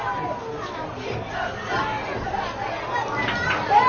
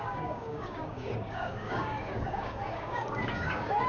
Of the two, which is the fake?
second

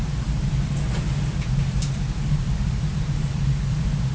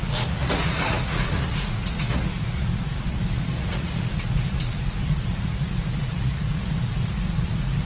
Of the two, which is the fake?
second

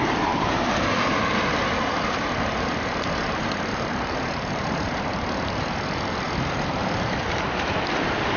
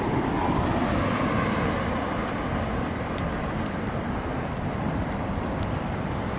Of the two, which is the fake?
first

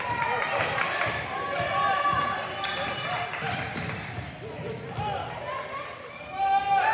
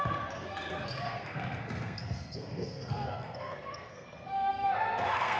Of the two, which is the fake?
second